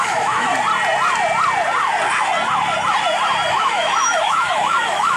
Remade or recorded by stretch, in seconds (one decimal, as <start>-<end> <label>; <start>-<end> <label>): 0.0-0.5 remade; 0.5-3.5 recorded; 3.5-5.2 remade